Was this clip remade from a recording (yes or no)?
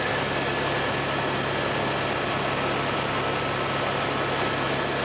no